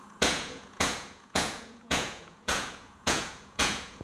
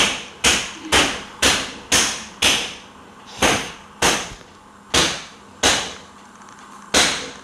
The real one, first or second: second